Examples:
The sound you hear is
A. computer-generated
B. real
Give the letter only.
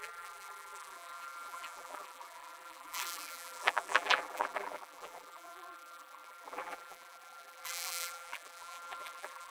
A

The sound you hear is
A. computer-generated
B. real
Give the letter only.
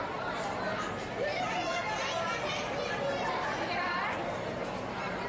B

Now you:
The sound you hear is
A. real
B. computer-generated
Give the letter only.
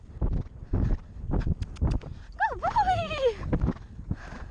A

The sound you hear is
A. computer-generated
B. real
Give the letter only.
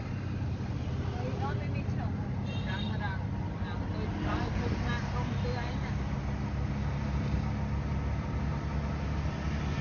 B